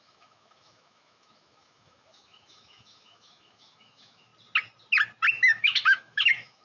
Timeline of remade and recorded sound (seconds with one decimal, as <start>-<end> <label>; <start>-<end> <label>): 0.0-4.3 remade; 4.3-5.3 recorded; 5.3-6.6 remade

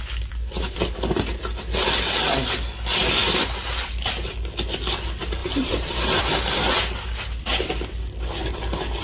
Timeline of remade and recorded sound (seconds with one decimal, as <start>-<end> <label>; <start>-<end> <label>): 0.0-5.4 recorded; 5.4-6.2 remade; 6.2-9.0 recorded